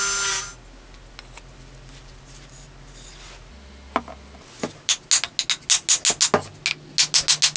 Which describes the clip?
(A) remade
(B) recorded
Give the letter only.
B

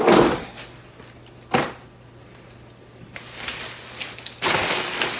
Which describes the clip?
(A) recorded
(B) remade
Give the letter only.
A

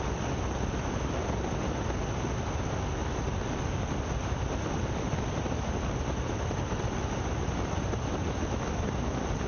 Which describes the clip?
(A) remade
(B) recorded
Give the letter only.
B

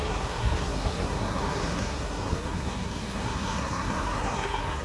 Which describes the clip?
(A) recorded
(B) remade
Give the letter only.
B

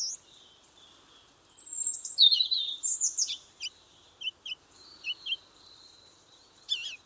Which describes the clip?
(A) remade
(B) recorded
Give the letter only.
B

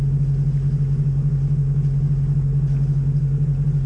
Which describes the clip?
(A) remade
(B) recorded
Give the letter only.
B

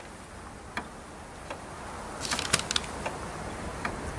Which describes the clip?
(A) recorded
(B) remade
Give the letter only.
A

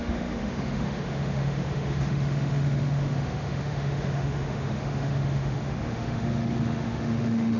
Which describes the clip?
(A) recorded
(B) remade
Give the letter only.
B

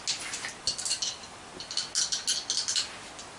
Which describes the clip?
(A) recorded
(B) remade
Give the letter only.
A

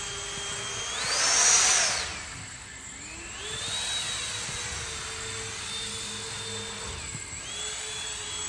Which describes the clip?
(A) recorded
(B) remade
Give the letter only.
A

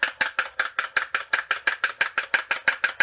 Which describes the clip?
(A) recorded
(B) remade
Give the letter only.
A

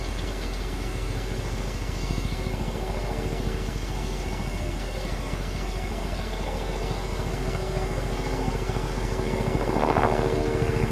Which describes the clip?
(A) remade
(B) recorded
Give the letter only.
A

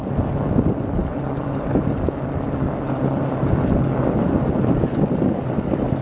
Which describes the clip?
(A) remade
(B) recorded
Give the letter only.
B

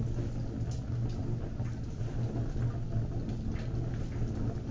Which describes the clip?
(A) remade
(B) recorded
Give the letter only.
B